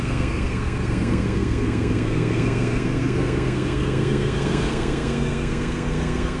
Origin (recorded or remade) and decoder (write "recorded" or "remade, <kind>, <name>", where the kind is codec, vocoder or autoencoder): remade, codec, SNAC